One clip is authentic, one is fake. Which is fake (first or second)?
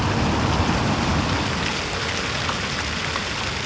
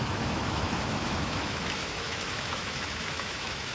second